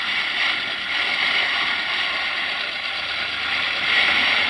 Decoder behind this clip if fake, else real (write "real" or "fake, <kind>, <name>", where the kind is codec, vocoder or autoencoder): fake, vocoder, BigVGAN v2